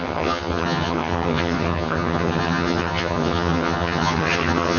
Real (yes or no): no